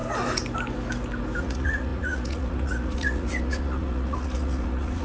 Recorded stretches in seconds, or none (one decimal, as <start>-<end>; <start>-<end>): 0.0-1.4